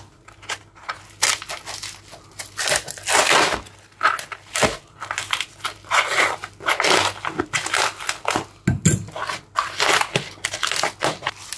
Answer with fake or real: real